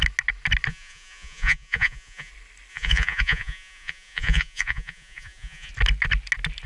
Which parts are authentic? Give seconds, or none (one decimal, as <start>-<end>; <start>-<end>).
0.0-0.7; 2.3-2.7; 5.7-6.7